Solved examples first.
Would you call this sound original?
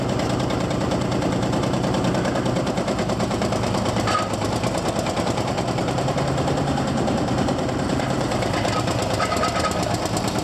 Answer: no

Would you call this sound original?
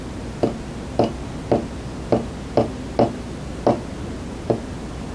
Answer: yes